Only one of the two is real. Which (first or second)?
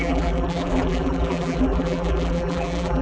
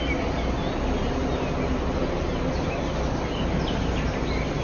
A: second